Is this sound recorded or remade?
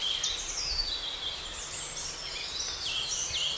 recorded